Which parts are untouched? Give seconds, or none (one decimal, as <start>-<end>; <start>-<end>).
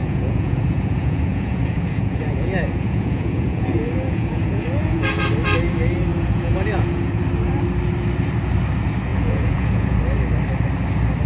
5.2-6.1; 7.2-9.1; 10.0-11.3